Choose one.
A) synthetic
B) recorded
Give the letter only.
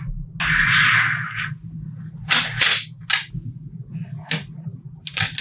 B